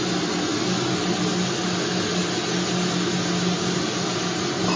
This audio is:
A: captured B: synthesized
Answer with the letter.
A